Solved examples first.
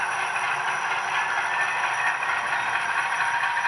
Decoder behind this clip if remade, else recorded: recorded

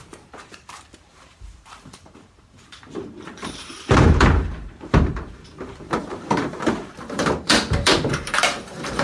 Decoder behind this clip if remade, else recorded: remade, vocoder, BigVGAN v2